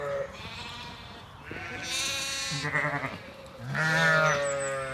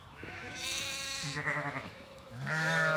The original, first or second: first